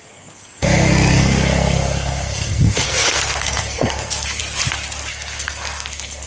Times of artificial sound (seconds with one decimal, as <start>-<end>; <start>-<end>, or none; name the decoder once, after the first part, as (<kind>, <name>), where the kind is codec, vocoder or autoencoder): 0.0-4.4 (codec, SNAC); 5.1-6.3